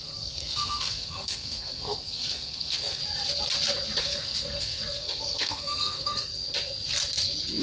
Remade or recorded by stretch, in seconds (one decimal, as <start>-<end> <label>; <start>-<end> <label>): 0.0-3.0 remade; 3.0-4.0 recorded; 4.0-6.3 remade; 6.3-7.6 recorded